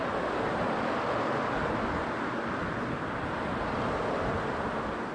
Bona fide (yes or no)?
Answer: yes